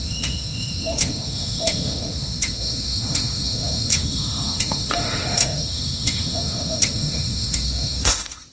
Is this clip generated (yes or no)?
yes